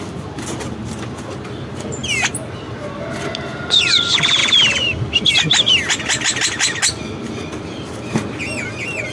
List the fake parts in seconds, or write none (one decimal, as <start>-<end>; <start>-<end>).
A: 4.4-5.3